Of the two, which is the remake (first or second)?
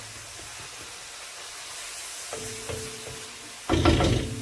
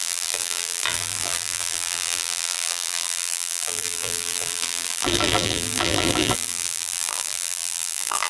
second